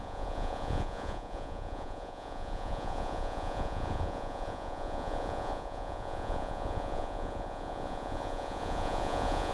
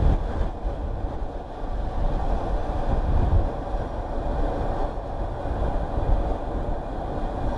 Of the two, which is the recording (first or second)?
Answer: second